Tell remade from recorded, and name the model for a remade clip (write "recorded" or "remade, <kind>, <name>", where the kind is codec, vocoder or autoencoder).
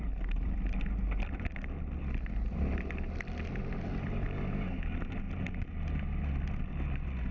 recorded